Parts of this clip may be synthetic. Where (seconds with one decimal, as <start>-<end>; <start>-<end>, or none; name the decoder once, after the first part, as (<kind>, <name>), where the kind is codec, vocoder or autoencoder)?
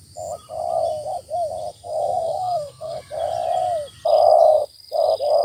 1.7-3.0 (codec, SNAC)